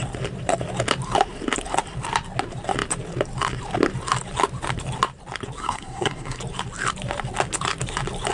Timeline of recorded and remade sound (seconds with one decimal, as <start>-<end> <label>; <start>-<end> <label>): 0.0-5.6 recorded; 5.6-6.4 remade; 6.4-8.3 recorded